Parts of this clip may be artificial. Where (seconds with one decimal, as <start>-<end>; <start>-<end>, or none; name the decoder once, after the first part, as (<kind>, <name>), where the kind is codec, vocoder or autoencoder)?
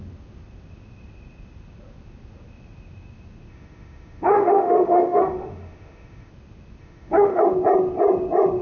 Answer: 3.5-6.3 (autoencoder, DAC-VAE); 6.8-7.4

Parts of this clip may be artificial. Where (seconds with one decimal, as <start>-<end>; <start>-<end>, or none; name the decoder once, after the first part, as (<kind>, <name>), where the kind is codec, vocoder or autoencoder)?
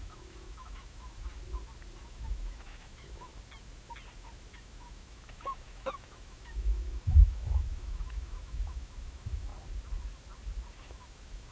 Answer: 0.0-1.4 (autoencoder, DAC-VAE); 2.0-3.3; 4.5-9.5; 10.8-11.5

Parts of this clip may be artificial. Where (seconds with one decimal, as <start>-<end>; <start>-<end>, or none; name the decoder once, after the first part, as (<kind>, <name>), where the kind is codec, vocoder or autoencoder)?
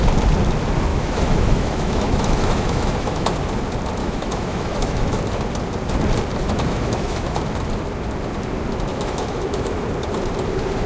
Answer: 0.9-3.3 (autoencoder, DAC-VAE); 4.0-5.2; 6.4-7.4; 8.9-9.9